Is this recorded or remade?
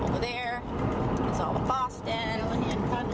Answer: recorded